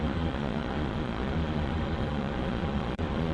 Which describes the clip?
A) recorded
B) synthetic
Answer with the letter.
B